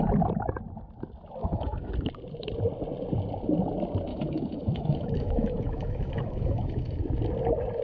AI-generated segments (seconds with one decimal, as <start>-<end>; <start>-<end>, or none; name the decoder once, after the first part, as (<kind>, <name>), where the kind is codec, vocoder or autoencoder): 1.4-1.9 (autoencoder, DAC-VAE); 4.1-7.0